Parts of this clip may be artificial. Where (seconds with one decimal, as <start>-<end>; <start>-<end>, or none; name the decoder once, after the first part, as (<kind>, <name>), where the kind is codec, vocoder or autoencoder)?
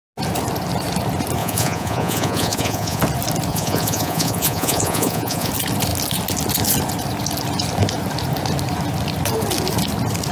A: 1.4-3.0 (vocoder, Vocos); 3.5-5.5